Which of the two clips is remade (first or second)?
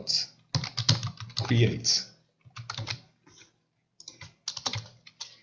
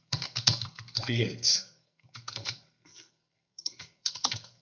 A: second